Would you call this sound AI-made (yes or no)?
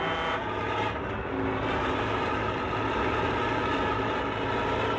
no